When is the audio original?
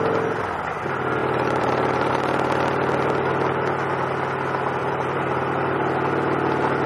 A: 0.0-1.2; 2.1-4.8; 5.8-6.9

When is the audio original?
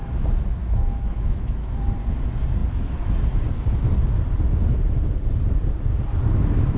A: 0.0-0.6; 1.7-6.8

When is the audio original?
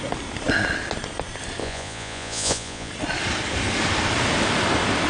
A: 0.0-1.6; 2.9-5.1